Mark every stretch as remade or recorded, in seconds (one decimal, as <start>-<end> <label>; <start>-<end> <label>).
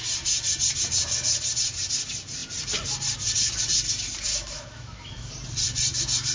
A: 0.0-4.3 recorded; 4.3-5.3 remade; 5.3-6.3 recorded